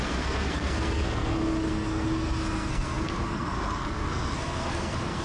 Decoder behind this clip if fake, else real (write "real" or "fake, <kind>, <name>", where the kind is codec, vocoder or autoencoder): fake, codec, SNAC